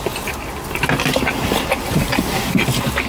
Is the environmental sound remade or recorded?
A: recorded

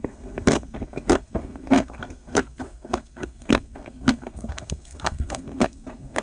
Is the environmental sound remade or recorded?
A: remade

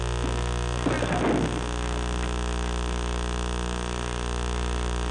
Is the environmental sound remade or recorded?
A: recorded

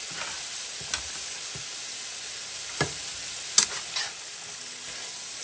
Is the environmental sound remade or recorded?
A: recorded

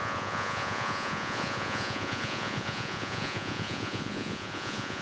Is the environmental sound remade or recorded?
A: remade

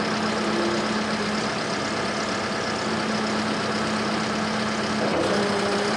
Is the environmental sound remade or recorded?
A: recorded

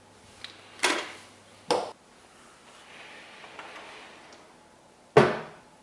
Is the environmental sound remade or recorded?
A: recorded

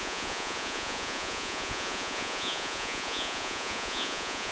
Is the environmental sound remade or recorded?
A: remade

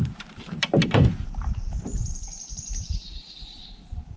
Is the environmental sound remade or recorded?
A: remade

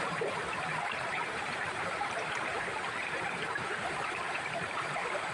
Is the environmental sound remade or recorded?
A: remade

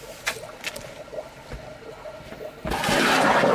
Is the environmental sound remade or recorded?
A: recorded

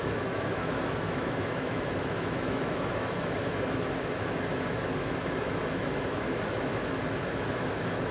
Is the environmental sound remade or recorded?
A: remade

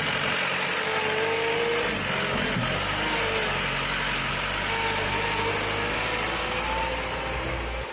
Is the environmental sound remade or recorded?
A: recorded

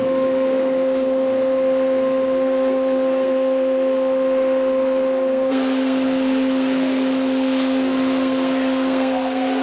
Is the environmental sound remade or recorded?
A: remade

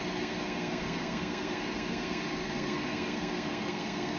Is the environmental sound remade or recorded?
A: remade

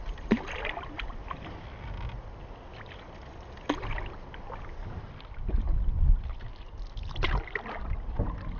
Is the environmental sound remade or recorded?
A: recorded